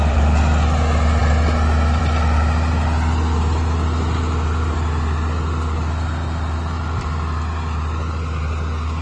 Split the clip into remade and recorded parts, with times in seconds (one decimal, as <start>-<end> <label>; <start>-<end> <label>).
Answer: 0.0-9.0 recorded